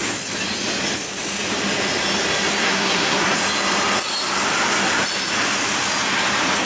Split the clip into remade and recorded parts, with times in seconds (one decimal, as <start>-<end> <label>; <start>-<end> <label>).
0.0-2.6 recorded; 2.6-3.4 remade; 3.4-6.7 recorded